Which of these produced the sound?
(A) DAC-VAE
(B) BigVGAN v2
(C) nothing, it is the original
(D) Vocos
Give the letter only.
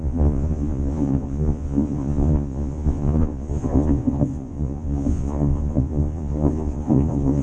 D